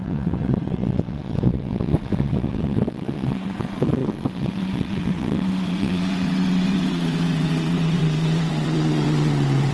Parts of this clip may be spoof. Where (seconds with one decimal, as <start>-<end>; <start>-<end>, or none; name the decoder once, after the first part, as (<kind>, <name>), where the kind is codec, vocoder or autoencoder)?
0.0-9.7 (vocoder, WaveNeXt)